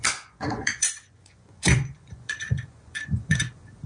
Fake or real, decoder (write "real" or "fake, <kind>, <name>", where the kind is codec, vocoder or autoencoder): fake, vocoder, Vocos